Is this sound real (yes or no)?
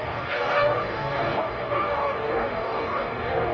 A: no